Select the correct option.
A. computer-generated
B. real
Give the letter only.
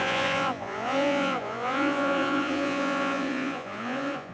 A